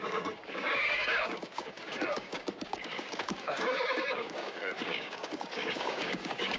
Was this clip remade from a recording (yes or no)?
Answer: yes